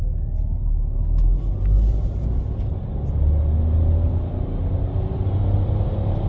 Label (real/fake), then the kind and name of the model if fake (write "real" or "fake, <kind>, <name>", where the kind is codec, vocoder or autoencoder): real